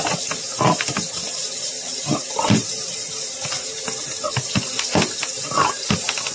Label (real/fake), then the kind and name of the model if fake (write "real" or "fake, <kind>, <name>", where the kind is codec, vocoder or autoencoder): real